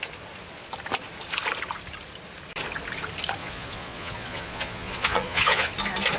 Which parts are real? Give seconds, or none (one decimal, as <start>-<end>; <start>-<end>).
0.0-3.4; 5.7-6.2

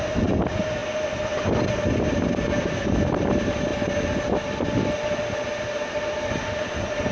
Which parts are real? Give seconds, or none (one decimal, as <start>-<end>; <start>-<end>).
0.0-7.1